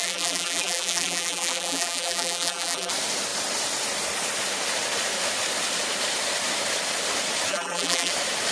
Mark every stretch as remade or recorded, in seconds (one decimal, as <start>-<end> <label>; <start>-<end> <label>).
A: 0.0-2.9 remade; 2.9-7.5 recorded; 7.5-8.1 remade; 8.1-8.5 recorded